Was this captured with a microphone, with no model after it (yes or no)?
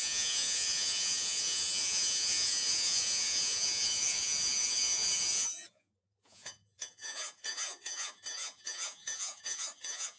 no